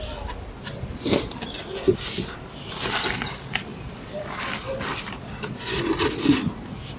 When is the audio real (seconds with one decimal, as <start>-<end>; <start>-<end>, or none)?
0.0-7.0